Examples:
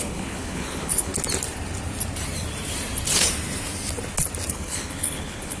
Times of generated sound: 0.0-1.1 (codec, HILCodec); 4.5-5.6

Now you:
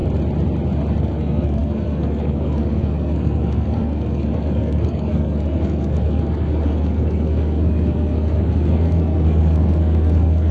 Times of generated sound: 1.0-10.5 (codec, SNAC)

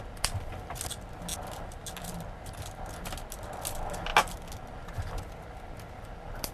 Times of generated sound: none

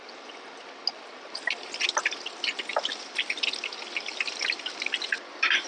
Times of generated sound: none